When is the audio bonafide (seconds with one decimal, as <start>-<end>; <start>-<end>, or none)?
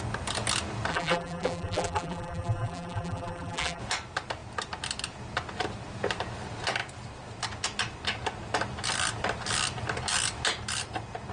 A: 0.0-0.9; 3.8-11.3